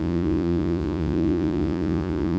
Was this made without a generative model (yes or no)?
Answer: no